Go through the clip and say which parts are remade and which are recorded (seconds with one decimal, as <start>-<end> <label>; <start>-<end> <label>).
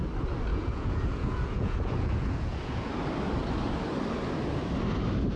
0.0-0.5 recorded; 0.5-2.9 remade; 2.9-5.4 recorded